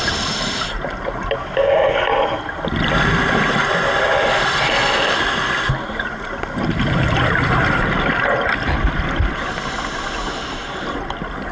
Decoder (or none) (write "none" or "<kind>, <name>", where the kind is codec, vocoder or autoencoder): none